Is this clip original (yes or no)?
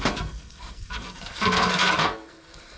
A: no